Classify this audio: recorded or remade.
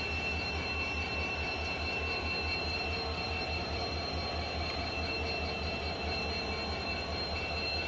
remade